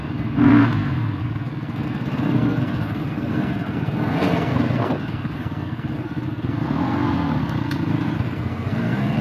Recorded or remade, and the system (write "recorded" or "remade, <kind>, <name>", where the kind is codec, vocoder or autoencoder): remade, codec, SNAC